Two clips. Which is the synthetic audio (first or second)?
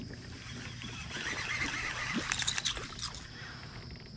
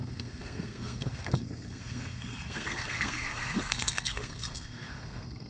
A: second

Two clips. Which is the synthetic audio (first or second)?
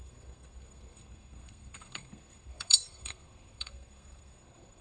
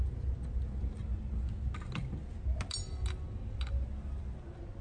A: first